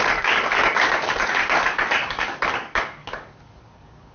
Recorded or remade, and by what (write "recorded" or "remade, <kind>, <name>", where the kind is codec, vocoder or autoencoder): remade, codec, DAC